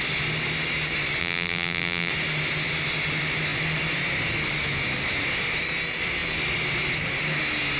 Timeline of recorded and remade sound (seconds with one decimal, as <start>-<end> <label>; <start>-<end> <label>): 0.0-1.2 recorded; 1.2-2.1 remade; 2.1-7.8 recorded